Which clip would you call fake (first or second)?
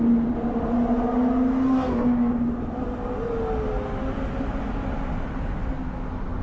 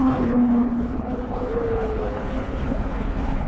second